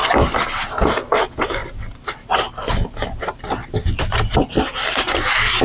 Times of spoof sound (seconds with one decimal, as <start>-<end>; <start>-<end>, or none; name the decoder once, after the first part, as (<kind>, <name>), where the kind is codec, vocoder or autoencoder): 1.6-4.5 (vocoder, BigVGAN v2)